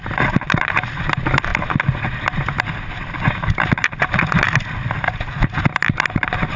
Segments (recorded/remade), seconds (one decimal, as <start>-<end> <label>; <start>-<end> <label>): 0.0-6.6 recorded

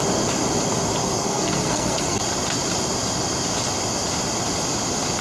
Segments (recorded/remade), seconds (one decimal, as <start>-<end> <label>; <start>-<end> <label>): 0.0-1.0 recorded; 1.0-2.2 remade; 2.2-5.2 recorded

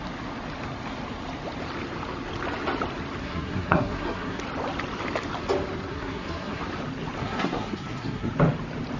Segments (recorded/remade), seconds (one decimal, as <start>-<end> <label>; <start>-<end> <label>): 0.0-3.2 recorded; 3.2-4.4 remade; 4.4-5.9 recorded; 5.9-6.6 remade; 6.6-7.2 recorded; 7.2-8.3 remade; 8.3-9.0 recorded